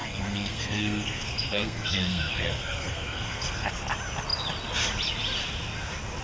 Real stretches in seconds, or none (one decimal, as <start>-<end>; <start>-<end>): 3.7-6.2